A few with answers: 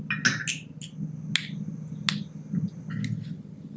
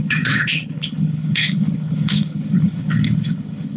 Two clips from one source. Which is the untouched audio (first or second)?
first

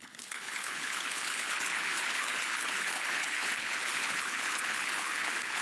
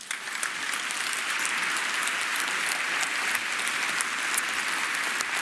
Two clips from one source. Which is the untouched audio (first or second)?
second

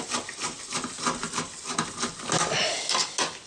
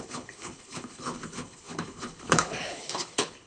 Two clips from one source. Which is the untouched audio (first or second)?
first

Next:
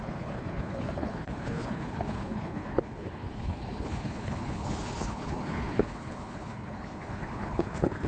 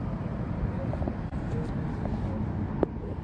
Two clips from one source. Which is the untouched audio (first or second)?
second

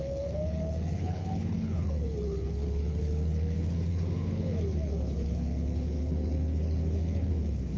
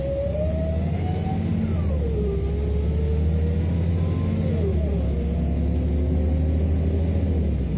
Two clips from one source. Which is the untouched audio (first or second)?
second